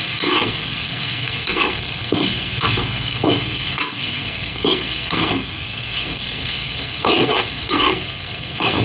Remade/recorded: remade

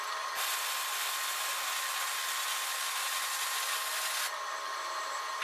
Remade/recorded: recorded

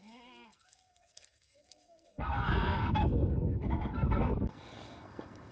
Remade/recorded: remade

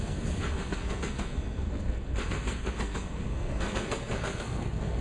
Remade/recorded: remade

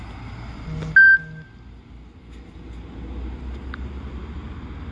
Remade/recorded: recorded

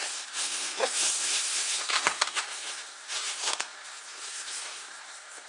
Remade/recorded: remade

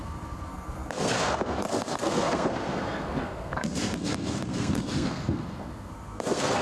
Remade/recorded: remade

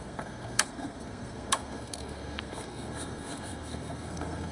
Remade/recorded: remade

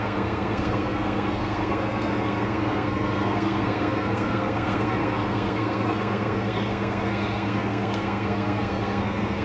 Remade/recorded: remade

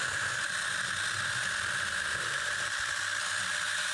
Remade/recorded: recorded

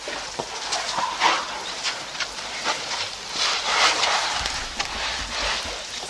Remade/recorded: recorded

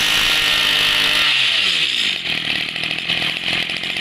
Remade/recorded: recorded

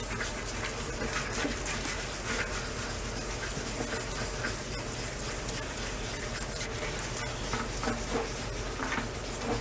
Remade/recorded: recorded